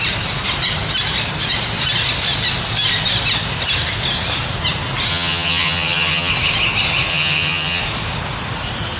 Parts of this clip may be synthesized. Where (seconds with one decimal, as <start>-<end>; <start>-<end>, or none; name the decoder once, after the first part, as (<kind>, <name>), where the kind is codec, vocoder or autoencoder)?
5.1-6.3 (vocoder, HiFi-GAN); 7.1-7.8